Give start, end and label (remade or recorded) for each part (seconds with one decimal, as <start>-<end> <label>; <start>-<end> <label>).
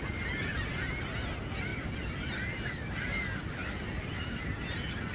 0.0-5.1 recorded